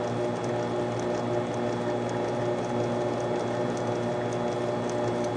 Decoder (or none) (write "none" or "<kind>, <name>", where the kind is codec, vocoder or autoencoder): none